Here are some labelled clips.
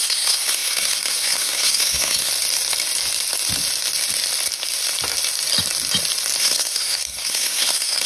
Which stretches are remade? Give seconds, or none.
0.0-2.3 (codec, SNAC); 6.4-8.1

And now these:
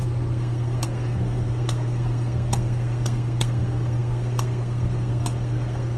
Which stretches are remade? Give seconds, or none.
0.0-6.0 (codec, SNAC)

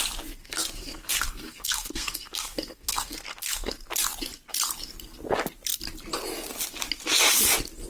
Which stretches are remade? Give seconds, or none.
0.4-3.7 (codec, SNAC)

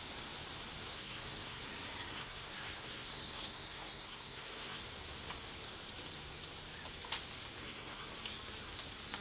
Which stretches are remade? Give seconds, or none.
0.9-1.6 (codec, SNAC); 2.1-4.8; 7.6-8.1